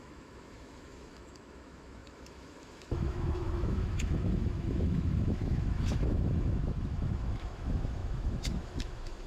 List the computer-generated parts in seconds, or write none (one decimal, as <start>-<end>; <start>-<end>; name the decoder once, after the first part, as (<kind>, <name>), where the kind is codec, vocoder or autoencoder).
0.0-9.3 (autoencoder, DAC-VAE)